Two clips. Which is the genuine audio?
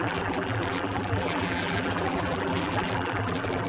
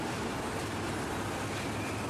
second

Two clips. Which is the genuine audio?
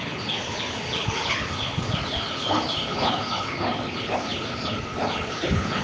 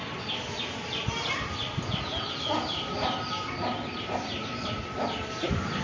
second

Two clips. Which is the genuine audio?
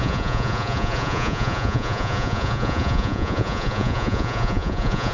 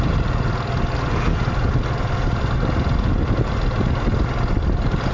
second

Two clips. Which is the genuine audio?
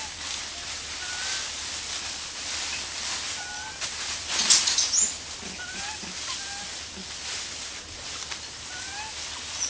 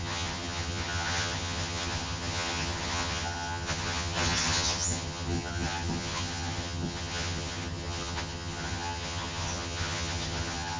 first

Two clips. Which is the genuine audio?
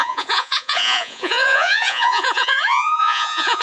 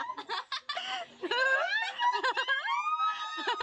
second